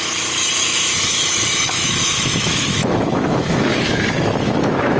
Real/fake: fake